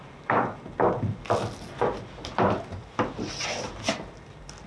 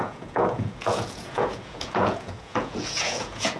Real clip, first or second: first